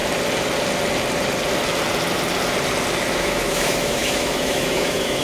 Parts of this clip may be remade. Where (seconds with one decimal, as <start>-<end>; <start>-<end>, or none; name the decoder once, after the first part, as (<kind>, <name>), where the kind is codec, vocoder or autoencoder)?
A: 3.1-5.2 (autoencoder, DAC-VAE)

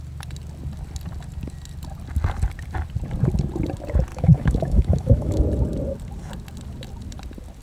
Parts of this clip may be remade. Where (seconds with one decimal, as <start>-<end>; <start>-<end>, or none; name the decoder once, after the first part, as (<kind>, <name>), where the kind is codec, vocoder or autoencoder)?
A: 4.1-5.4 (autoencoder, DAC-VAE)

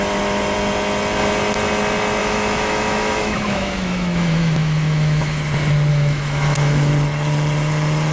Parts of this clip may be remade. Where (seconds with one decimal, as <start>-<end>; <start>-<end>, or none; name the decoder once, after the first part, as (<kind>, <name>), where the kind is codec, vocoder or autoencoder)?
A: 2.2-5.4 (autoencoder, DAC-VAE); 5.9-6.9

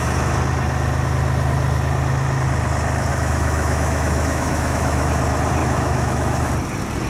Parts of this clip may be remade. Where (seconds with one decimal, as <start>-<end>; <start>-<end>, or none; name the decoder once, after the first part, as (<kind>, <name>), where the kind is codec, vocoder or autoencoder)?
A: 3.1-5.1 (autoencoder, DAC-VAE); 5.6-6.5